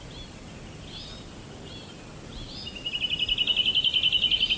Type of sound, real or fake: real